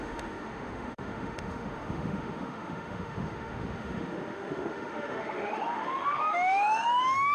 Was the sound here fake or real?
fake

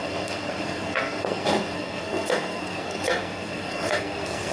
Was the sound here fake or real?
fake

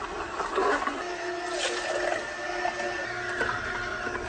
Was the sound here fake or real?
real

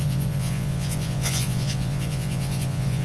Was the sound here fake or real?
fake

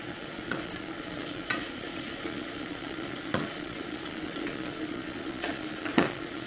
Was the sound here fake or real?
fake